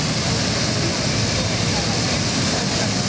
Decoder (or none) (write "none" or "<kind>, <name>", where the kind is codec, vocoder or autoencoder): none